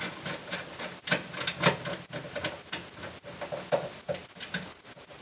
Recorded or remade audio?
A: recorded